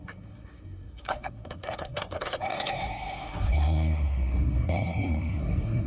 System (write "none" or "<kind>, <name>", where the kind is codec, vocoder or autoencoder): codec, SNAC